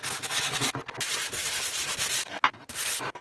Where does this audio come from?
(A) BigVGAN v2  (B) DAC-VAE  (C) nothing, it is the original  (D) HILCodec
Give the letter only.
C